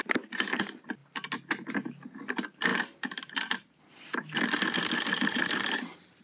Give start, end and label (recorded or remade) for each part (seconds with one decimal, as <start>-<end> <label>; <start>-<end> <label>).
0.0-1.0 recorded; 1.0-1.7 remade; 1.7-2.7 recorded; 2.7-6.2 remade